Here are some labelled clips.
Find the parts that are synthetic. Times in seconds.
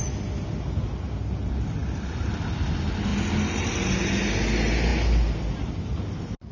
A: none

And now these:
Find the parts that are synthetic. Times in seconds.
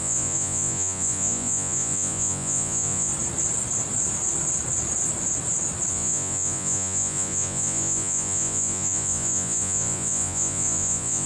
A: 0.0-3.1 (vocoder, Vocos); 5.9-11.3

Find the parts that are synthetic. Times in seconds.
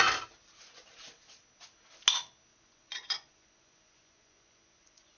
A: 2.5-5.2 (vocoder, Vocos)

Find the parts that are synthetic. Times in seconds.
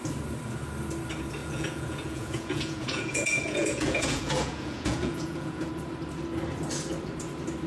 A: 1.4-5.7 (vocoder, Vocos)